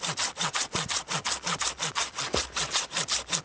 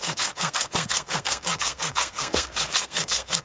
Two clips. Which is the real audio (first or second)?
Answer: first